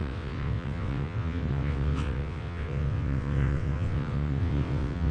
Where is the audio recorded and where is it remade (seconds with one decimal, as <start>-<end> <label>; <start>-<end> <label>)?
0.0-5.1 remade